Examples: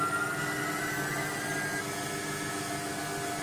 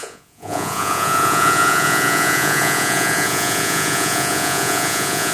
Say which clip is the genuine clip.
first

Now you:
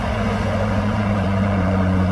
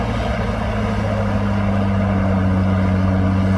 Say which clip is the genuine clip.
second